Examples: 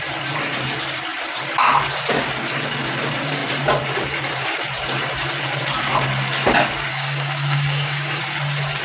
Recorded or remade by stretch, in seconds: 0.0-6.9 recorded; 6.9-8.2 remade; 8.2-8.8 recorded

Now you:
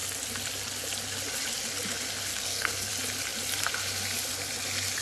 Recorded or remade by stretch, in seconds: 0.0-2.3 recorded; 2.3-2.9 remade; 2.9-5.0 recorded

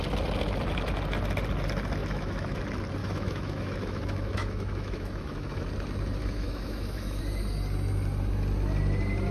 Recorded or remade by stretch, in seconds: 0.0-2.0 recorded; 2.0-2.6 remade; 2.6-3.0 recorded; 3.0-5.6 remade; 5.6-6.2 recorded; 6.2-7.2 remade; 7.2-9.3 recorded

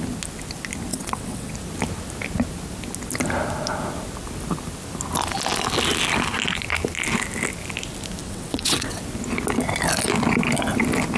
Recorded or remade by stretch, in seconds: 0.0-0.9 recorded; 0.9-1.5 remade; 1.5-8.2 recorded; 8.2-9.0 remade; 9.0-11.2 recorded

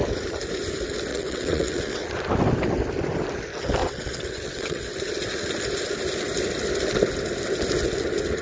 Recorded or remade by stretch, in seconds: 0.0-1.1 recorded; 1.1-2.1 remade; 2.1-3.8 recorded; 3.8-4.8 remade; 4.8-8.4 recorded